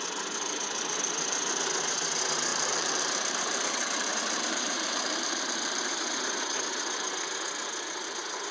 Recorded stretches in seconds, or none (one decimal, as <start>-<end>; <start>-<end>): 0.0-2.5; 6.0-8.5

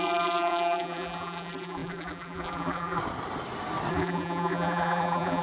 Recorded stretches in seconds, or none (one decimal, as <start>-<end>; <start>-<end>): 3.0-3.9